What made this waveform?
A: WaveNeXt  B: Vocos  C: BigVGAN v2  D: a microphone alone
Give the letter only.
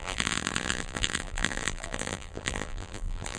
C